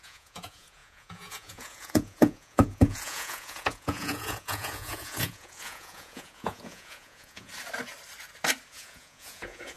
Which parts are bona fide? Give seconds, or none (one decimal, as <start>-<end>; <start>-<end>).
7.5-8.7